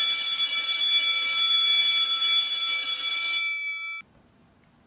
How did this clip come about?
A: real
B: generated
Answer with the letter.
A